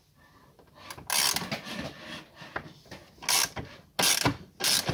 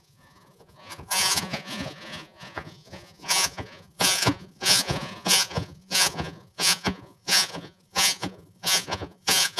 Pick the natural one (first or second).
first